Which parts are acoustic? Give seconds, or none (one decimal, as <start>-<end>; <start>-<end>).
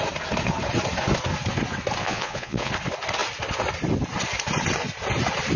0.0-2.0; 2.7-5.6